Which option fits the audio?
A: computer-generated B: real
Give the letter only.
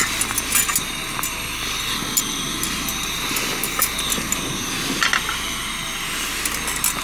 B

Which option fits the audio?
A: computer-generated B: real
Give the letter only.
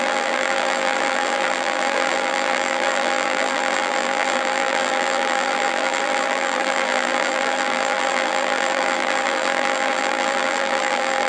A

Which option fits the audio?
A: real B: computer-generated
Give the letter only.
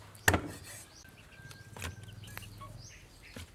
A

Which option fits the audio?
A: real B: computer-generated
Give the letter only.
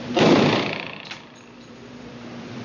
B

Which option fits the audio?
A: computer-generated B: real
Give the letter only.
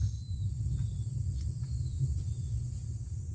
A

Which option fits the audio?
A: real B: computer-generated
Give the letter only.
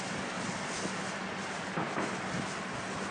A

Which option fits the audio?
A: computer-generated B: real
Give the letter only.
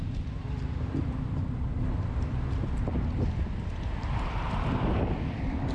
A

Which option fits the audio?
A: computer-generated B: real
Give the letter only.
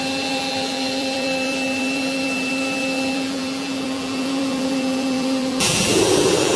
A